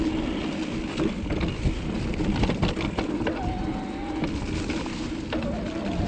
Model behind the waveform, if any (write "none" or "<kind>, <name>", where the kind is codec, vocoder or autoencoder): none